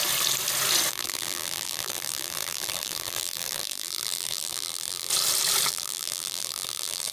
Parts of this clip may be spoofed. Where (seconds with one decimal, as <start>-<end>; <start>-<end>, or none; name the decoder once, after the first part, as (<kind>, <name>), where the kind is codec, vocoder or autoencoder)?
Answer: 0.9-5.1 (vocoder, BigVGAN v2); 5.7-7.1